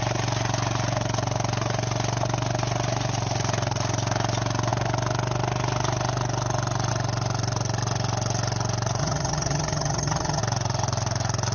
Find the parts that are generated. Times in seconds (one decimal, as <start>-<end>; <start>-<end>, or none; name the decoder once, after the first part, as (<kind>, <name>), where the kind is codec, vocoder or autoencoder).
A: 9.0-10.4 (vocoder, HiFi-GAN)